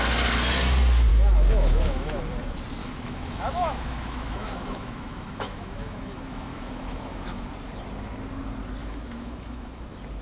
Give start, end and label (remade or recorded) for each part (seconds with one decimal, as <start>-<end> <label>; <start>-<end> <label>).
0.0-1.1 recorded; 1.1-2.2 remade; 2.2-2.8 recorded; 2.8-7.4 remade; 7.4-8.8 recorded; 8.8-9.7 remade; 9.7-10.2 recorded